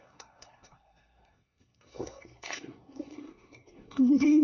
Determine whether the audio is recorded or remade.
remade